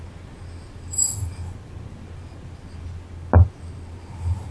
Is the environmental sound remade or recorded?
recorded